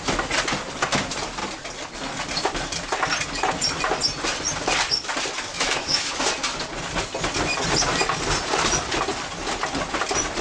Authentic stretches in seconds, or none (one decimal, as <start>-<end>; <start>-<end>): 0.0-5.5; 6.1-10.4